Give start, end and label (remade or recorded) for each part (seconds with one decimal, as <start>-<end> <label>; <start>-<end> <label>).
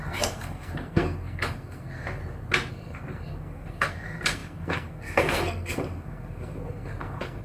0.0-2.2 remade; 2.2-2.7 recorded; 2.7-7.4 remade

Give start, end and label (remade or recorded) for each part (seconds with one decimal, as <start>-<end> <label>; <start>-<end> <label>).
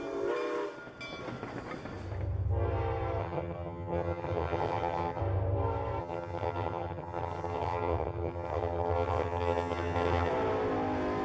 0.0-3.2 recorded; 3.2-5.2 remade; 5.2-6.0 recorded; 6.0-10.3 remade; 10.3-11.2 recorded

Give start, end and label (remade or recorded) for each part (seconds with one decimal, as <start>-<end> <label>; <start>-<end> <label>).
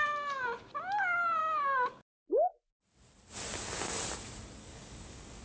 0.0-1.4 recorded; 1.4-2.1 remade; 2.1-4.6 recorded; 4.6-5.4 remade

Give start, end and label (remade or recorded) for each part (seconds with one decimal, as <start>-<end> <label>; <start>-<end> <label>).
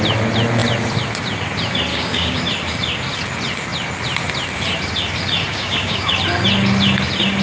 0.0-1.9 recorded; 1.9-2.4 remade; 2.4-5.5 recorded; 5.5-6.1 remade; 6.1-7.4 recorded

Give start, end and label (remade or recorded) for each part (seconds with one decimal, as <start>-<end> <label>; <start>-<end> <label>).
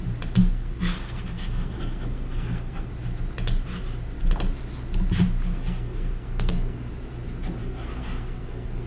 0.0-0.4 recorded; 0.4-2.9 remade; 2.9-5.5 recorded; 5.5-6.9 remade; 6.9-7.6 recorded; 7.6-8.9 remade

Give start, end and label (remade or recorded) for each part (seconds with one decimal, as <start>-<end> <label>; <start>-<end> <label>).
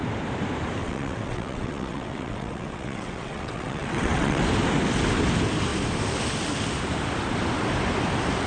0.0-0.8 recorded; 0.8-4.4 remade; 4.4-8.5 recorded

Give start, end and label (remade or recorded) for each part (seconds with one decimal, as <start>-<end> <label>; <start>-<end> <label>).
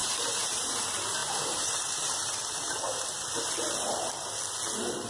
0.0-0.7 remade; 0.7-1.2 recorded; 1.2-4.3 remade; 4.3-5.1 recorded